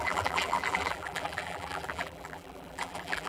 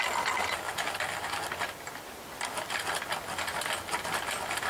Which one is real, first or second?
second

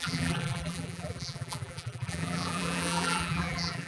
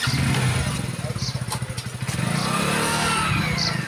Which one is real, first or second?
second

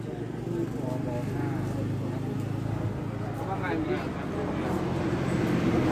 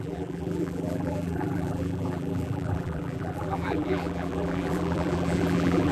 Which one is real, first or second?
first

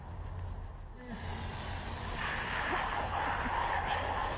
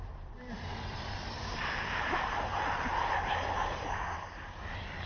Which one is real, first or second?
first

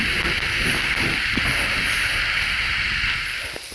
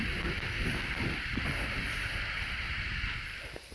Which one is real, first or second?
first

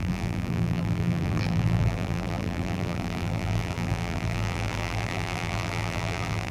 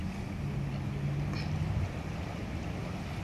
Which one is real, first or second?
second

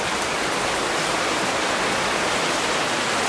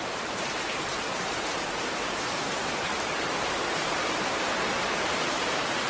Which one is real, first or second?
first